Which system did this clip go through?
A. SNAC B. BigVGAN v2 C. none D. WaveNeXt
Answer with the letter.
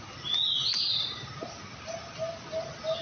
C